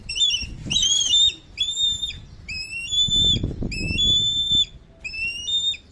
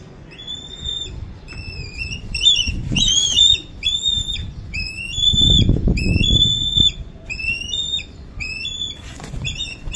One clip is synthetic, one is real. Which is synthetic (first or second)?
second